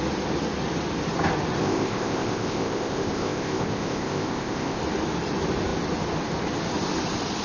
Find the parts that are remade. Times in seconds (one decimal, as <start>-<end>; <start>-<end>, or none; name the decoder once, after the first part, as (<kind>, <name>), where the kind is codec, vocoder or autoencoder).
1.6-4.8 (codec, ZipCodec)